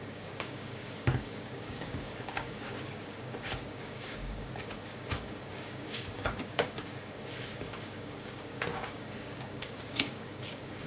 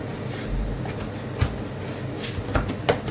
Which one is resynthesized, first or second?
first